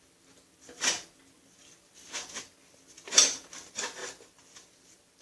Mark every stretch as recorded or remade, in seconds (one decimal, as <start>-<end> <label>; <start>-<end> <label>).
0.0-4.0 recorded; 4.0-5.2 remade